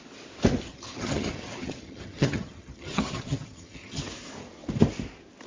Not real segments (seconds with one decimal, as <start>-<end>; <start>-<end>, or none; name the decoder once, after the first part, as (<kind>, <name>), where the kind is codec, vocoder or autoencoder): 0.7-4.0 (vocoder, HiFi-GAN)